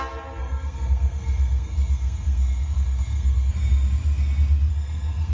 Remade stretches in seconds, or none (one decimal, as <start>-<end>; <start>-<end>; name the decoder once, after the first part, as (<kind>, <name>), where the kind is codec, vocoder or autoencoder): 0.4-3.5 (codec, SNAC); 4.7-5.3